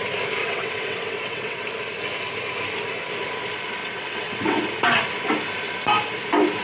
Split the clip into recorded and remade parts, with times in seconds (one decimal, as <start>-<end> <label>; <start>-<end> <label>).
0.0-0.4 recorded; 0.4-1.6 remade; 1.6-3.8 recorded; 3.8-4.6 remade; 4.6-6.6 recorded